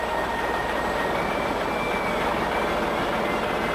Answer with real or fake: real